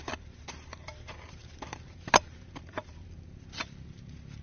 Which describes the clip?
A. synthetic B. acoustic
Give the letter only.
A